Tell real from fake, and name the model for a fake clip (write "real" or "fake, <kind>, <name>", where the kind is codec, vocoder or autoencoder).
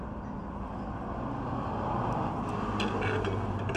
real